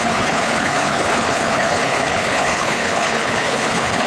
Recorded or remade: remade